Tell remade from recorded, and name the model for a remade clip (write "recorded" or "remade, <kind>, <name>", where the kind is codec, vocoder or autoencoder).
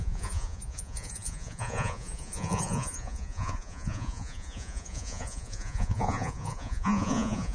remade, vocoder, Vocos